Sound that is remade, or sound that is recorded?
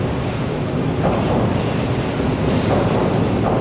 recorded